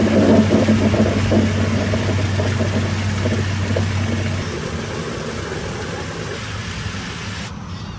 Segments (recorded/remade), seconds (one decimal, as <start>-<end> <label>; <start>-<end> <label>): 0.0-8.0 recorded